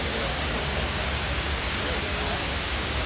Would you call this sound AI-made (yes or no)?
yes